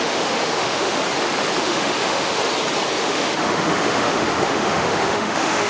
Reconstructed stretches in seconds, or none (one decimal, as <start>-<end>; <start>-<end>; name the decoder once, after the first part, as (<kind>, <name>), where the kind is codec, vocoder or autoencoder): 0.0-1.0 (autoencoder, DAC-VAE); 1.6-2.4; 3.0-5.7